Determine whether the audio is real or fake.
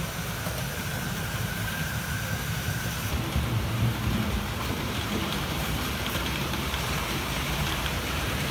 fake